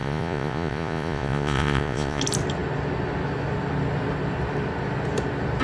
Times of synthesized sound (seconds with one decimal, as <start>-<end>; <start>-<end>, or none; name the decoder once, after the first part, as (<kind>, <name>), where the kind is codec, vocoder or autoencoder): 0.0-2.2 (vocoder, Vocos)